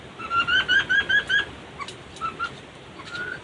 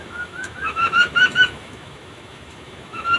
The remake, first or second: second